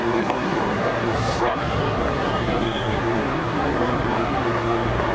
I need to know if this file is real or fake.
fake